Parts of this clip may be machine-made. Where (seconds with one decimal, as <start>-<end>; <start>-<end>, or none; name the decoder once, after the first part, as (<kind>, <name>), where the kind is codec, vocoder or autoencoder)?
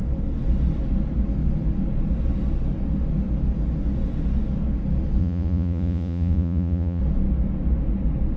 5.2-7.0 (vocoder, Vocos)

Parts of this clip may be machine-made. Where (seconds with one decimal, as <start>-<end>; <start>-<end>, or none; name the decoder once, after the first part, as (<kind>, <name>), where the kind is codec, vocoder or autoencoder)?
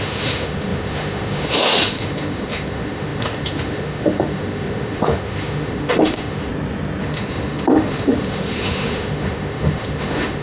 0.0-6.5 (autoencoder, DAC-VAE); 7.0-10.4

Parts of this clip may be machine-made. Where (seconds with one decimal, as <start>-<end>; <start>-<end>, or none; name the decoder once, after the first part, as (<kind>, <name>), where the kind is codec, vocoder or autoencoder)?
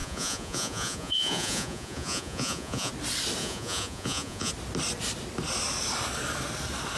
0.0-2.9 (vocoder, Vocos); 3.4-4.5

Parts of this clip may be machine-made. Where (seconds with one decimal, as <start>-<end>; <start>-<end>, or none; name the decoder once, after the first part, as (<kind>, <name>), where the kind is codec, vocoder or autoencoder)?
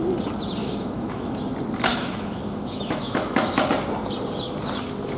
0.6-1.4 (autoencoder, DAC-VAE); 1.9-3.6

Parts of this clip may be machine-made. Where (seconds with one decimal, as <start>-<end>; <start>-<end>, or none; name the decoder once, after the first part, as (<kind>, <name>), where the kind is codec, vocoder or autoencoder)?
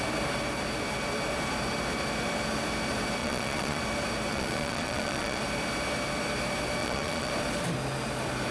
3.2-3.8 (vocoder, Vocos); 4.3-5.4; 6.8-7.3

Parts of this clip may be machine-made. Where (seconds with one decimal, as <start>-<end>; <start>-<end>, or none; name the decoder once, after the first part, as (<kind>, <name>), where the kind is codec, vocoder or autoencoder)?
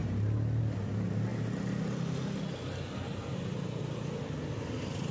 none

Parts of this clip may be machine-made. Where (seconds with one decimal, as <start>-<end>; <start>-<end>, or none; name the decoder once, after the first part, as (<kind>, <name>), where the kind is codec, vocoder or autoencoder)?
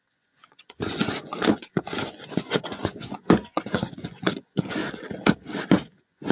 0.0-4.8 (vocoder, Vocos); 5.7-6.3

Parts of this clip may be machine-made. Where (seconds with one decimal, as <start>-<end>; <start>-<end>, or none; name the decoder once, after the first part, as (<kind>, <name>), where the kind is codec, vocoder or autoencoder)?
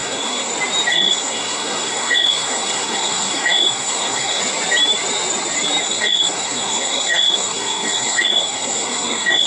0.0-0.5 (codec, SNAC); 0.9-4.4; 5.8-9.5